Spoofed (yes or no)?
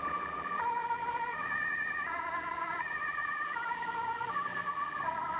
yes